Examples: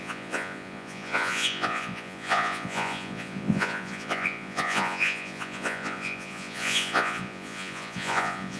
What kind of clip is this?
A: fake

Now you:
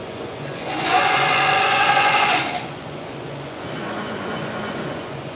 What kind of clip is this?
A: fake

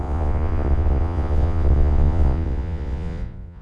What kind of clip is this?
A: fake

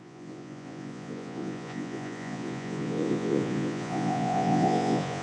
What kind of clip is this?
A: fake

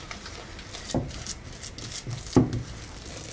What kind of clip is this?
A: real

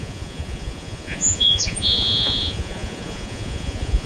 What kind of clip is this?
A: fake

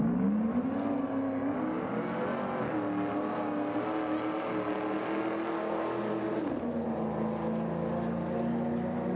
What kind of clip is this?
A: real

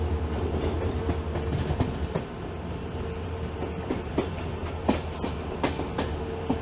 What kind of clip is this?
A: real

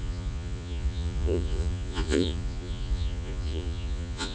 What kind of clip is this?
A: fake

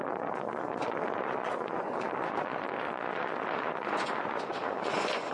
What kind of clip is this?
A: fake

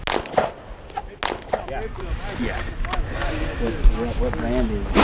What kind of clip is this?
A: real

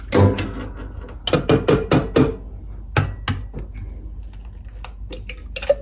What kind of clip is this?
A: real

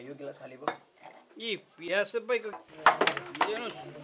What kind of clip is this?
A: real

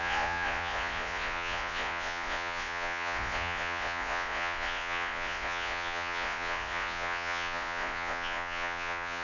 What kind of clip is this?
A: fake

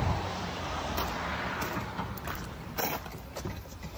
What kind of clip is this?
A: real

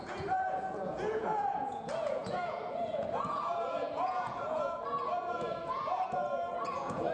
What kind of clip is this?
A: fake